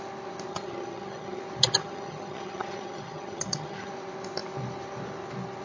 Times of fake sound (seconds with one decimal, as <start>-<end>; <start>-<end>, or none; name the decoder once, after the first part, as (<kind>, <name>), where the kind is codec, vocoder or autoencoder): 0.5-1.4 (vocoder, HiFi-GAN); 1.8-3.9